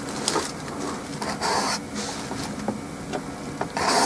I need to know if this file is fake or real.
real